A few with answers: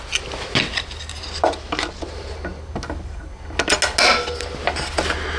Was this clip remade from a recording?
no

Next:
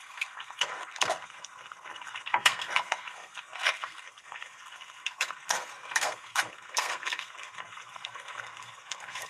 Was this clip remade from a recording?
yes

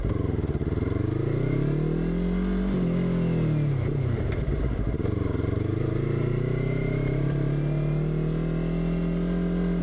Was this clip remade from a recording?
no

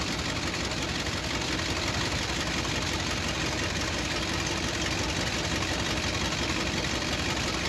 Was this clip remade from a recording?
no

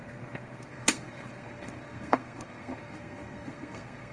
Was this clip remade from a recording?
yes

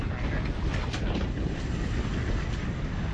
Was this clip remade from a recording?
no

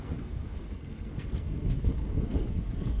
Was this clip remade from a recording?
yes